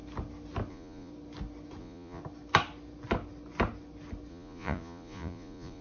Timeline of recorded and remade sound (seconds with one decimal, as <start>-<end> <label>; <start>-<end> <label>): 0.0-0.7 recorded; 0.7-1.1 remade; 1.1-1.8 recorded; 1.8-2.2 remade; 2.2-4.3 recorded; 4.3-5.8 remade